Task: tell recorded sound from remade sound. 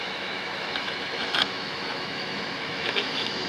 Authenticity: remade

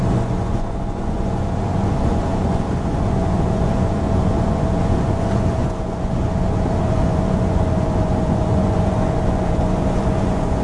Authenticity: remade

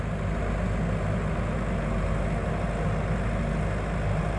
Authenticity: recorded